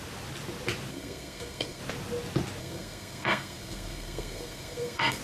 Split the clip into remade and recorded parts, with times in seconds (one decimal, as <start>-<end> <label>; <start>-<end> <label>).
0.0-0.9 recorded; 0.9-1.8 remade; 1.8-2.6 recorded; 2.6-5.2 remade